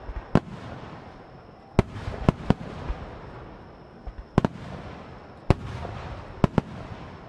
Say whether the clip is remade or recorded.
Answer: recorded